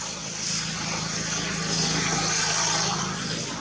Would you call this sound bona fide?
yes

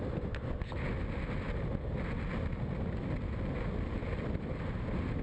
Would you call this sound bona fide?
yes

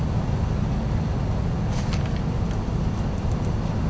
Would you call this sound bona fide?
yes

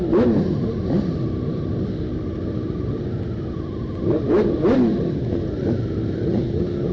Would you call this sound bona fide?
yes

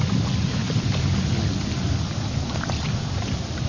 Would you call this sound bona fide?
yes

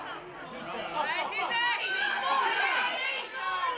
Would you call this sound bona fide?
yes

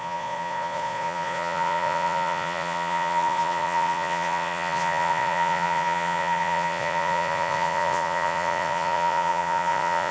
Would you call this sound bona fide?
no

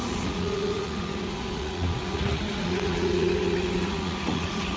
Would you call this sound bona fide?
no